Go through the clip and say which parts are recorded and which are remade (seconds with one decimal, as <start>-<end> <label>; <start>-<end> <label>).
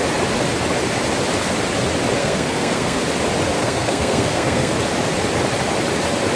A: 0.0-2.2 recorded; 2.2-3.0 remade; 3.0-3.6 recorded; 3.6-4.7 remade; 4.7-6.4 recorded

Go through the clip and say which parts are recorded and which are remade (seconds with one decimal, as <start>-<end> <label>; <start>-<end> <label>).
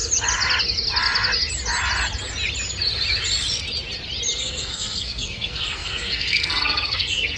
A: 0.0-4.4 recorded; 4.4-7.4 remade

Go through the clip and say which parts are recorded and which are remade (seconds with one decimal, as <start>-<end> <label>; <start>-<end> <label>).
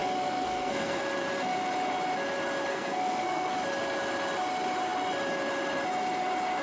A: 0.0-1.0 remade; 1.0-2.7 recorded; 2.7-3.5 remade; 3.5-6.6 recorded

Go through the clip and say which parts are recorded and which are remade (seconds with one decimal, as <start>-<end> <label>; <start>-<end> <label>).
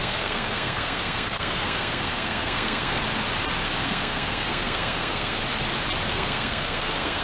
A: 0.0-3.0 remade; 3.0-3.8 recorded; 3.8-5.4 remade; 5.4-6.1 recorded; 6.1-7.2 remade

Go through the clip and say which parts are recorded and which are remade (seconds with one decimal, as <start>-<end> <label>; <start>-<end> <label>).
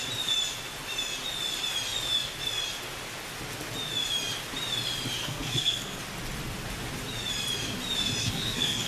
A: 0.0-5.2 recorded; 5.2-6.0 remade; 6.0-8.2 recorded; 8.2-8.9 remade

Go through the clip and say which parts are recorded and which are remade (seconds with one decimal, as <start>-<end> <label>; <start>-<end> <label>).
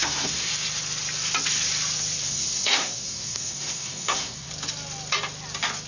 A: 0.0-0.5 remade; 0.5-2.2 recorded; 2.2-4.5 remade; 4.5-5.9 recorded